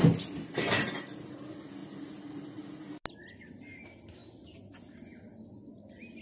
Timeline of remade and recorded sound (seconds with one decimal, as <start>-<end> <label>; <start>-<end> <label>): 0.0-6.2 recorded